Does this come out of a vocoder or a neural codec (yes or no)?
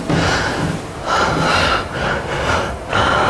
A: no